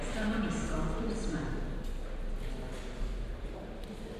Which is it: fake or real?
real